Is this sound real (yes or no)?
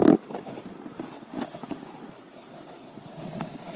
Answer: yes